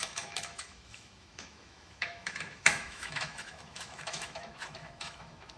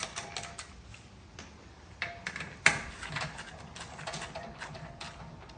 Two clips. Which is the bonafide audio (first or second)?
second